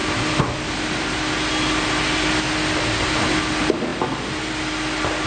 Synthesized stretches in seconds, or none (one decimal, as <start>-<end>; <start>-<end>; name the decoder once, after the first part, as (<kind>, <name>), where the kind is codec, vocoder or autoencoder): none